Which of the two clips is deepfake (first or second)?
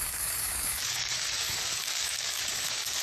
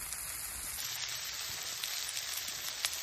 first